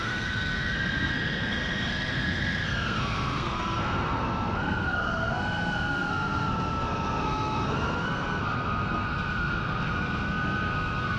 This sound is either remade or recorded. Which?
remade